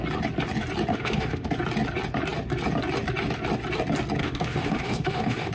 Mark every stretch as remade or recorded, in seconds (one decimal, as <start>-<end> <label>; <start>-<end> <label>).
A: 0.0-0.9 recorded; 0.9-1.5 remade; 1.5-4.2 recorded; 4.2-5.5 remade